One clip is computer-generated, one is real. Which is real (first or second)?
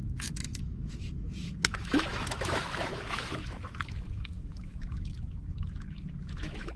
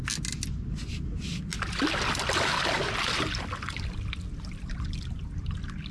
second